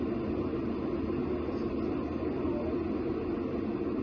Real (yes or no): yes